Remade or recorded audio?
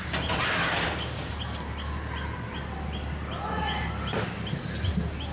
recorded